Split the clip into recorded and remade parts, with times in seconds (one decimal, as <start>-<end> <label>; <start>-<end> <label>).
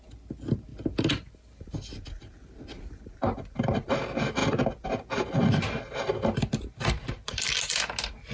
0.0-8.3 recorded